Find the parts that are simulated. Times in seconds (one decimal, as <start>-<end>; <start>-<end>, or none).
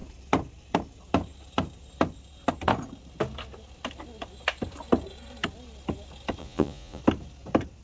6.4-7.0